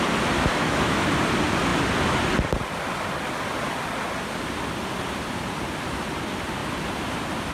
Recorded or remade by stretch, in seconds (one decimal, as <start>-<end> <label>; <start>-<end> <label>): 0.0-0.5 recorded; 0.5-1.1 remade; 1.1-7.5 recorded